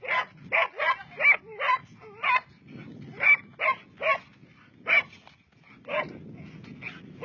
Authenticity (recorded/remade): recorded